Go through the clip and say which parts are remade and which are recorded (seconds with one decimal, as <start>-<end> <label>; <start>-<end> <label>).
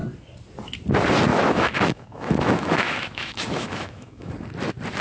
0.0-1.3 recorded; 1.3-4.3 remade; 4.3-5.0 recorded